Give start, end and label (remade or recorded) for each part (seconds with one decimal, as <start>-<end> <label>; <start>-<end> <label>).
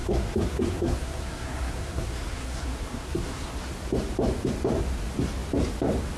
0.0-3.5 remade; 3.5-6.2 recorded